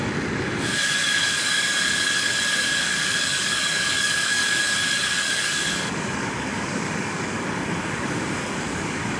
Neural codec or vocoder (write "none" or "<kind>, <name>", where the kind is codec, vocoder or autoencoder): codec, DAC